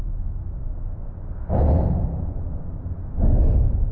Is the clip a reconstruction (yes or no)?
no